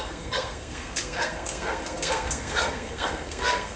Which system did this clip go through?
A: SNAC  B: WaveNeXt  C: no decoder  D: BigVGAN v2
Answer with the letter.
A